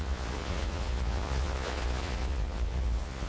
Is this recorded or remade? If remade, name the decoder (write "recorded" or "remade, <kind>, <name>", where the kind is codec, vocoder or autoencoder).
remade, vocoder, Vocos